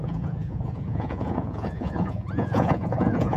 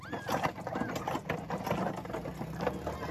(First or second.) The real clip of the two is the second